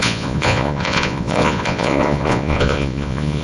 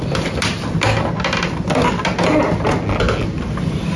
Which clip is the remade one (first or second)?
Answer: first